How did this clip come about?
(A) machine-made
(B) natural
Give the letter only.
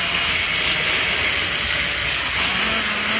B